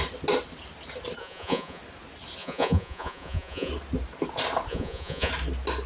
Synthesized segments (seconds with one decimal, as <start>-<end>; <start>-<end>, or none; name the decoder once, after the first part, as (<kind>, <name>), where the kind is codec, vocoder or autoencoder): 1.2-1.8 (vocoder, Vocos); 2.4-3.7; 4.7-5.3